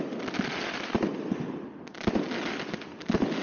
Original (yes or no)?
yes